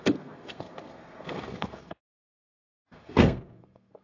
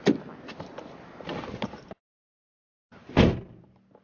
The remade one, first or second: first